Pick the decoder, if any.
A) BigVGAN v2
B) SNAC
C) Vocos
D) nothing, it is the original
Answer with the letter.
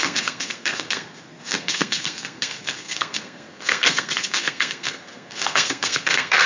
B